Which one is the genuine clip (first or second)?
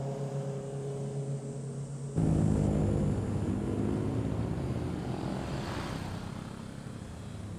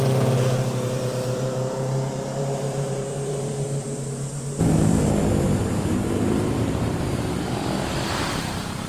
first